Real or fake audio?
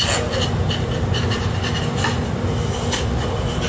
real